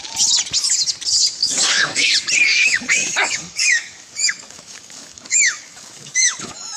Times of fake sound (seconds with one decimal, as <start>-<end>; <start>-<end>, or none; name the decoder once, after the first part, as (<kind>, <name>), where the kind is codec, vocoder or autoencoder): 1.4-2.1 (codec, DAC); 2.5-6.8